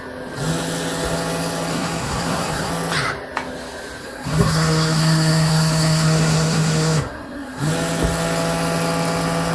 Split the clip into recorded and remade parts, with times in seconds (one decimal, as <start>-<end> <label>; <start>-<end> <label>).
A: 0.0-1.7 recorded; 1.7-2.7 remade; 2.7-4.0 recorded; 4.0-7.7 remade; 7.7-9.5 recorded